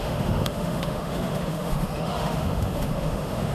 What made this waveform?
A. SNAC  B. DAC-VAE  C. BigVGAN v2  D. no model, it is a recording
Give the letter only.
B